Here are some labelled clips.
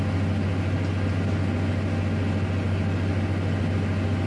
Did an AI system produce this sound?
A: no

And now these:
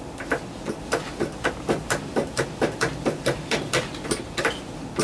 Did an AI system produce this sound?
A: no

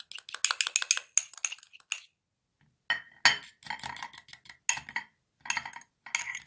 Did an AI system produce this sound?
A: no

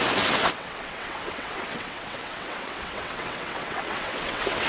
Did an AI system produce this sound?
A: yes